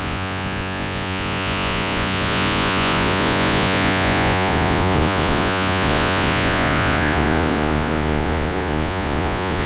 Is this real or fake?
fake